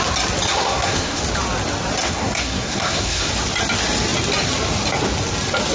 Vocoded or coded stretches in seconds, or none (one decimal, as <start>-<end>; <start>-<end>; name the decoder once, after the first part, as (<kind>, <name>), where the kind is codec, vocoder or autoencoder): 0.5-1.2 (codec, SNAC); 2.0-3.3